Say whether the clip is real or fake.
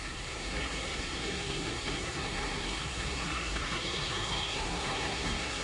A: fake